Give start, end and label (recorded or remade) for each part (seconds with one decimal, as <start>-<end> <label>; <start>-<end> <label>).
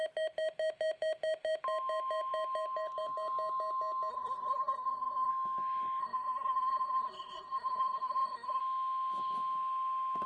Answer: 0.0-4.1 recorded; 4.1-5.3 remade; 5.3-6.0 recorded; 6.0-8.6 remade; 8.6-10.3 recorded